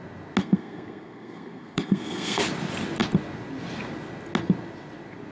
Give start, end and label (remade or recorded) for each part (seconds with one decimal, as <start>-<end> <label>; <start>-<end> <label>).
0.0-0.4 recorded; 0.4-2.4 remade; 2.4-5.3 recorded